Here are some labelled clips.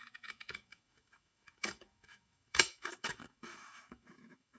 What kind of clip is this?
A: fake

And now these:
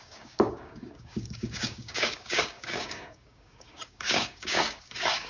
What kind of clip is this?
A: fake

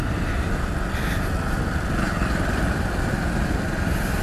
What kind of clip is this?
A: real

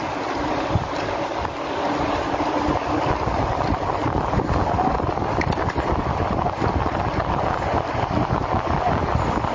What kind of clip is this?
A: real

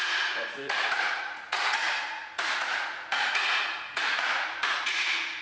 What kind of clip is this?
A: fake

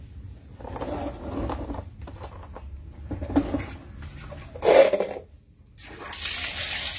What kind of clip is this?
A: real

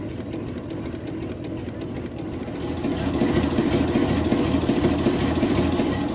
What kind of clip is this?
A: real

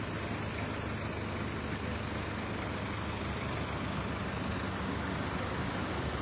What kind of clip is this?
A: real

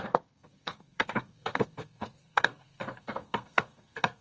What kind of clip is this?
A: fake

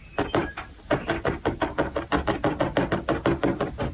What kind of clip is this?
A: real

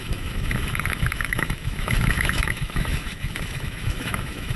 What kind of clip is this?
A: fake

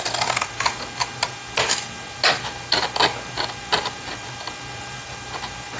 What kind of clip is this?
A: real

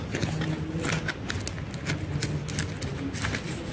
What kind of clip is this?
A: real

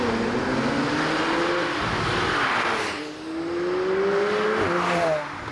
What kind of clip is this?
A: real